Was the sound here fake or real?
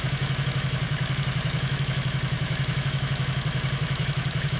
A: fake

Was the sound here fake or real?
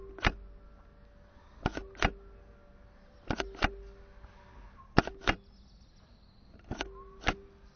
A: real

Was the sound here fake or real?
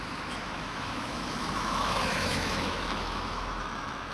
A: fake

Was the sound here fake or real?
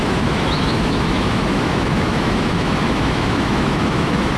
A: fake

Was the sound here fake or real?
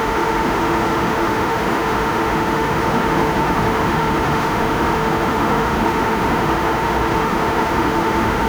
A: fake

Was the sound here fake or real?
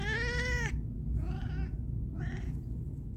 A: real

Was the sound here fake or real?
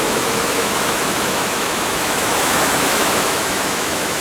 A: fake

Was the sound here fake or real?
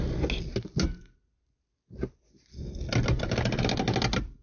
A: real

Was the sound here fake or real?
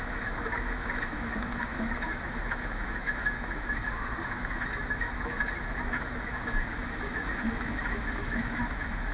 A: fake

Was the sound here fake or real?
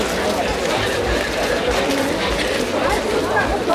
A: real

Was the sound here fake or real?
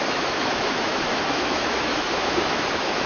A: fake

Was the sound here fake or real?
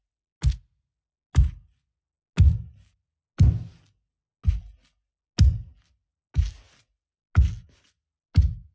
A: real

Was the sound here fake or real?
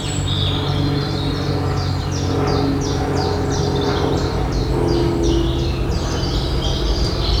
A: real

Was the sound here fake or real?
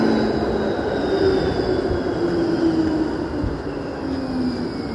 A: real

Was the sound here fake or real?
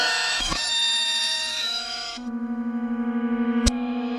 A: fake